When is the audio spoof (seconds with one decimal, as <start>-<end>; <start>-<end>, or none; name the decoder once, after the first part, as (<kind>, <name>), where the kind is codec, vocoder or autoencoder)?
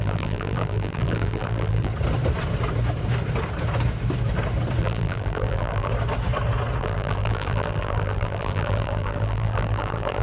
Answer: 0.0-1.9 (vocoder, BigVGAN v2); 4.8-5.9; 6.8-10.2